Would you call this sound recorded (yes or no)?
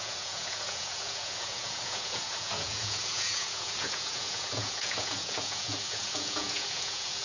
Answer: no